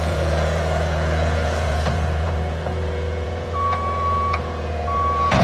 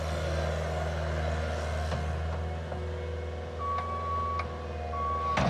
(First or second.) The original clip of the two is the second